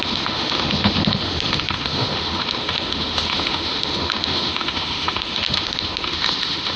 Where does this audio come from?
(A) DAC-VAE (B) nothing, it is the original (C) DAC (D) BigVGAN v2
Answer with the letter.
A